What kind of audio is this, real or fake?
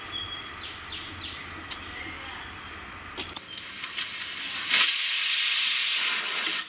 real